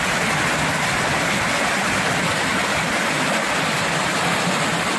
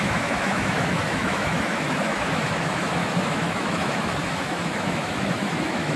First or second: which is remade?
second